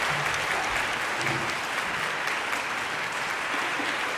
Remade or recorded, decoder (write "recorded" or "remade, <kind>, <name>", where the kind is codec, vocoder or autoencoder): recorded